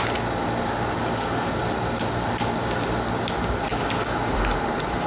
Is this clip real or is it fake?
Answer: real